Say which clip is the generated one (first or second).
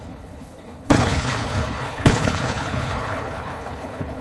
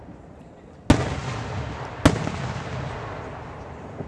first